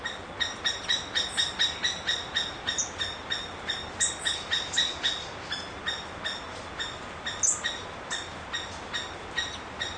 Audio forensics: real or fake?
real